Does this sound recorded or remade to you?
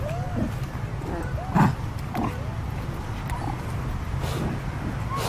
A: recorded